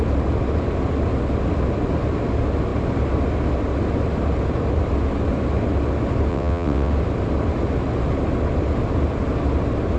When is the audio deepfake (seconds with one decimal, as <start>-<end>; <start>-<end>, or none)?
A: 6.3-6.9